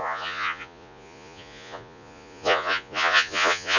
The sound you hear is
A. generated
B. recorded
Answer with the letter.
A